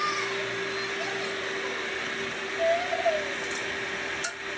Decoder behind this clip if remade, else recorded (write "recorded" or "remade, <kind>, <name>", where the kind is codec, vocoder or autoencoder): recorded